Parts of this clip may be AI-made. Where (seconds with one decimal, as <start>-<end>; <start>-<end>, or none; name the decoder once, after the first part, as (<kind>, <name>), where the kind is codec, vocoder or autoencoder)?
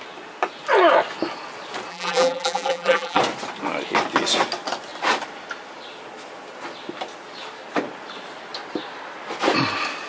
1.9-3.2 (vocoder, BigVGAN v2)